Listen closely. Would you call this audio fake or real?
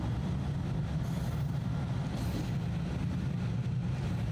real